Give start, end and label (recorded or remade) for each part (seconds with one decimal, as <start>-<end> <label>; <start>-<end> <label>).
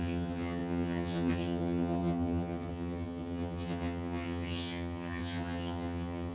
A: 0.0-6.3 remade